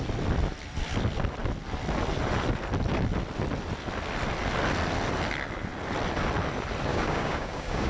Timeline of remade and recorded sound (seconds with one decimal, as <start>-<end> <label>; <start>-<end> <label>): 0.0-6.9 recorded; 6.9-7.9 remade